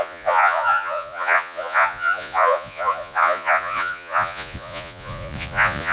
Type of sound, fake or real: fake